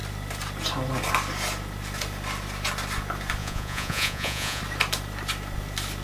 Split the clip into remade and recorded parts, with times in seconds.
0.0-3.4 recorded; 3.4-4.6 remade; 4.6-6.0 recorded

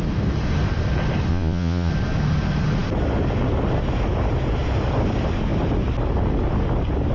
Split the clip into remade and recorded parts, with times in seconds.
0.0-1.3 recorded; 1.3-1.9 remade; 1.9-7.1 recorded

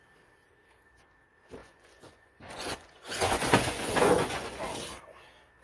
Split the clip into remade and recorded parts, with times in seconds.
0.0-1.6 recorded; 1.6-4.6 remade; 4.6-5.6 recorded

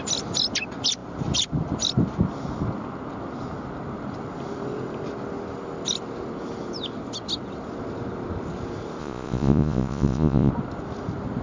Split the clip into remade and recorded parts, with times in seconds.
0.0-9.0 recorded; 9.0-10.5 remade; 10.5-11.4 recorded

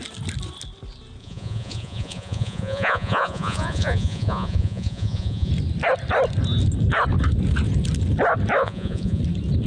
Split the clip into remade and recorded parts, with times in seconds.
0.0-1.2 recorded; 1.2-5.5 remade; 5.5-8.6 recorded; 8.6-9.2 remade; 9.2-9.7 recorded

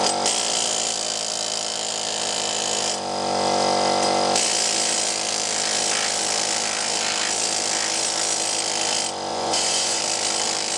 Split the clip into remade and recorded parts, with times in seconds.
0.0-9.3 recorded; 9.3-10.0 remade; 10.0-10.8 recorded